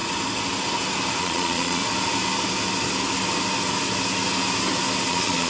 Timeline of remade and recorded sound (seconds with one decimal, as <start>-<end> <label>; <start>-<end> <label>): 0.0-1.2 recorded; 1.2-1.8 remade; 1.8-5.1 recorded; 5.1-5.5 remade